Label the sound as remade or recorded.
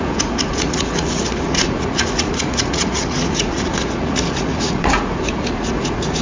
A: remade